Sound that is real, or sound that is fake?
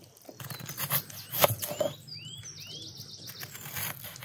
real